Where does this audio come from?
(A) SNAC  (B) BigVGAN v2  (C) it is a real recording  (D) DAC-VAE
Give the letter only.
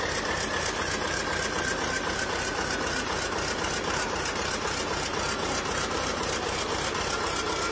C